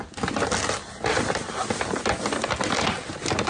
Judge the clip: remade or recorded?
recorded